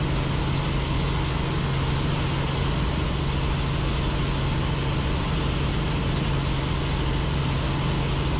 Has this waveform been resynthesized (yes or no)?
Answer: no